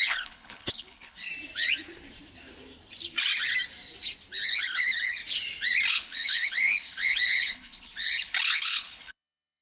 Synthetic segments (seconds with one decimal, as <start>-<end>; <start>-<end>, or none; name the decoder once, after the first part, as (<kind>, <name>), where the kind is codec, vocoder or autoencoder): 0.0-1.3 (codec, HILCodec); 4.5-5.2; 5.9-9.6